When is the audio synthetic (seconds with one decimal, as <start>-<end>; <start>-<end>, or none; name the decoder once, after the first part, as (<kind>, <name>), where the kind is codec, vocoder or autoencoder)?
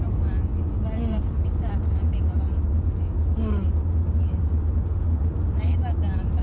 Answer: none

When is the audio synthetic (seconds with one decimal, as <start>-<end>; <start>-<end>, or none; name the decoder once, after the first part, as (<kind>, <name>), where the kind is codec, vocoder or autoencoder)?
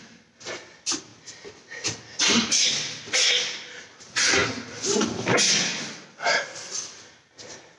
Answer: none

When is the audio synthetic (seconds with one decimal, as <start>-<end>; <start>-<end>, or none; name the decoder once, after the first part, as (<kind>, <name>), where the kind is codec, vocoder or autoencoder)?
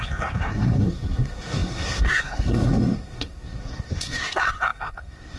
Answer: 0.0-5.4 (codec, SNAC)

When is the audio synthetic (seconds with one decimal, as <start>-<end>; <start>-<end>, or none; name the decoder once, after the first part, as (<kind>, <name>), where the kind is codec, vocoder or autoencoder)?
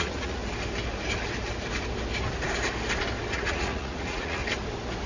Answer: 0.0-0.4 (vocoder, Vocos); 3.3-4.4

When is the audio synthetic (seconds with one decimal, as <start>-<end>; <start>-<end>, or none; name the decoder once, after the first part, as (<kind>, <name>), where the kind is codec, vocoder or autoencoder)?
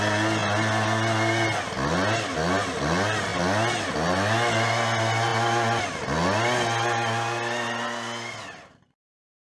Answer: none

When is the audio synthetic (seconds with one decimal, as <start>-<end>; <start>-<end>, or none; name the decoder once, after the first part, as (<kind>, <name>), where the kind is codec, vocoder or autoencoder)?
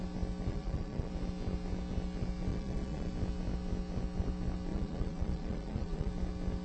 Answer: 0.5-1.1 (vocoder, Vocos); 2.5-3.1; 4.7-6.1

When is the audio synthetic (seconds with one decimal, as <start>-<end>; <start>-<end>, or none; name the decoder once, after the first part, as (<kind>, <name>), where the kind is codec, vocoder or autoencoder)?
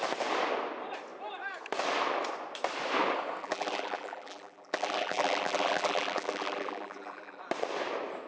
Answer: 3.4-7.4 (vocoder, BigVGAN v2)